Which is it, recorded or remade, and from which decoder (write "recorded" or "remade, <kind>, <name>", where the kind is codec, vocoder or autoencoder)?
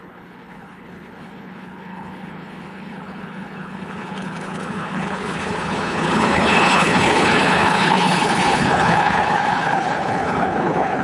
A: remade, codec, HILCodec